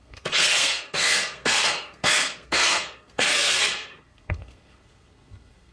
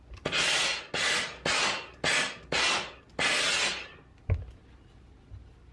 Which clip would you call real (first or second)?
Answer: second